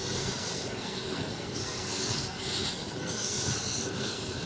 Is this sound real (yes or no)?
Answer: no